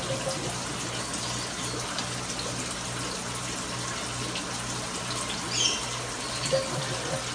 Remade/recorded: recorded